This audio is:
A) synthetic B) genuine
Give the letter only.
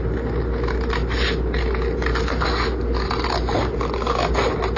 B